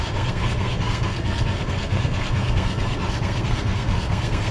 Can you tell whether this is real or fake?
fake